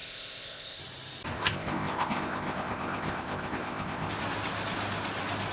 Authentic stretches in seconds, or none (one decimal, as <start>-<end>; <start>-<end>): 0.8-1.3; 4.1-5.5